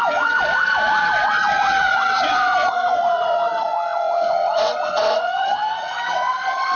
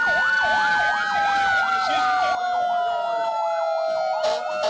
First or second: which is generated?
first